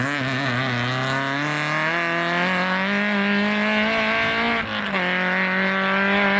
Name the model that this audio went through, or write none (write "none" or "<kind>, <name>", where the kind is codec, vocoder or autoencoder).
none